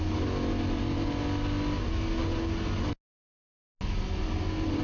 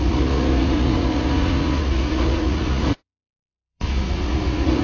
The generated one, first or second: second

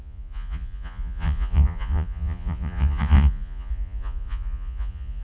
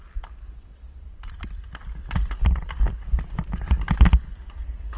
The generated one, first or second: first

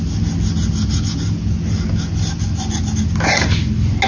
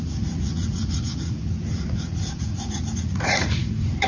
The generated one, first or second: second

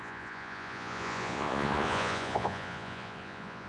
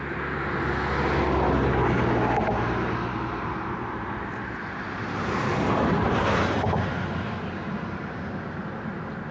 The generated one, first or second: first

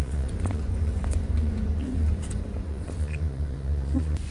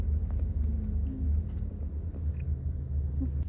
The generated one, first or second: first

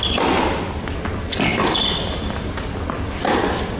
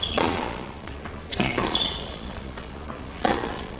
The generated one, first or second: second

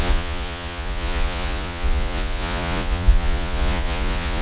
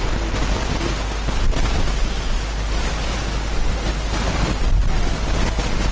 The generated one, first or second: first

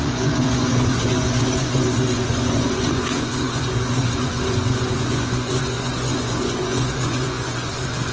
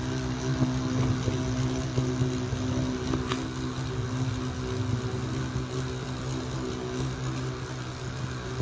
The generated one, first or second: first